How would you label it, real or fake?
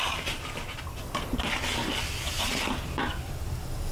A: real